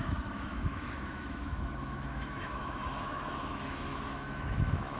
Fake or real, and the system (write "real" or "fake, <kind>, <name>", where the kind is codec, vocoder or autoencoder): fake, autoencoder, DAC-VAE